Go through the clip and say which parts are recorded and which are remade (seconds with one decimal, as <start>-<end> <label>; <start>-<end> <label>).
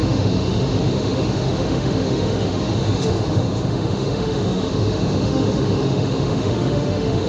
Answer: 0.0-7.3 remade